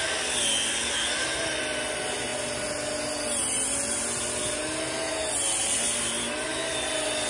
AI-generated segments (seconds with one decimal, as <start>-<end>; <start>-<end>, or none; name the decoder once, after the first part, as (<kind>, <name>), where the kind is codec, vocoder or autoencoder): none